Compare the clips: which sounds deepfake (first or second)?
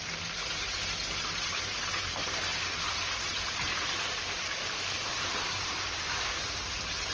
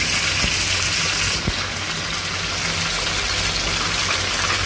first